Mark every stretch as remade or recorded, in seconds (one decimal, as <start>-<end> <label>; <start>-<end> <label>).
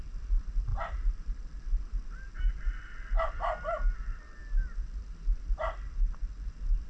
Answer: 0.0-6.9 recorded